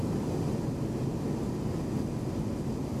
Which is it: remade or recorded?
recorded